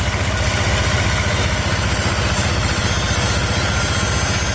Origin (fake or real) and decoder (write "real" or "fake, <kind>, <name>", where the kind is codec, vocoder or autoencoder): real